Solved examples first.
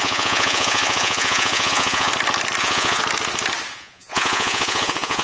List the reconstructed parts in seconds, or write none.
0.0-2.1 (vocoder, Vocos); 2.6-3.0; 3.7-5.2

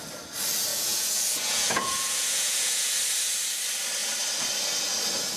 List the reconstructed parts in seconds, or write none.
0.7-2.9 (vocoder, Vocos)

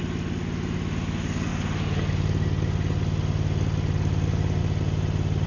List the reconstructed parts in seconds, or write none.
none

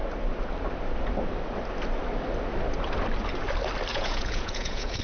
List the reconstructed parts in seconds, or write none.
3.9-5.0 (vocoder, Vocos)

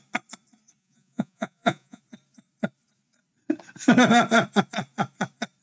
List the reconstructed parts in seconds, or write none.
0.8-2.0 (vocoder, Vocos)

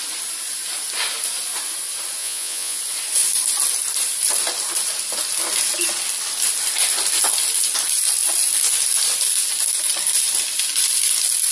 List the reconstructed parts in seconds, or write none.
2.2-2.8 (vocoder, Vocos)

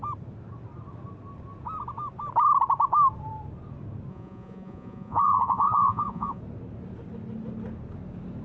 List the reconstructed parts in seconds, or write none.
4.1-6.4 (vocoder, Vocos)

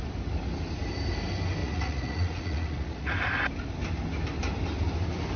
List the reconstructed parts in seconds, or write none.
1.6-3.1 (vocoder, Vocos)